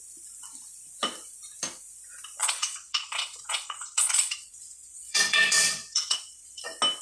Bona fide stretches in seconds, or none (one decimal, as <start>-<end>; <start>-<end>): 0.0-2.4; 6.6-7.0